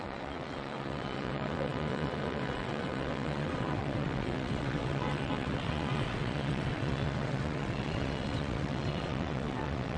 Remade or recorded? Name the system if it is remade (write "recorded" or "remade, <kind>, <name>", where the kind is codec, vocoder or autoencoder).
remade, vocoder, WaveNeXt